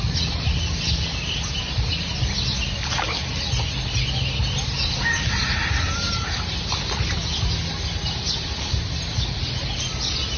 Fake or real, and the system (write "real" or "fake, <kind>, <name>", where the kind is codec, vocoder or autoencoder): real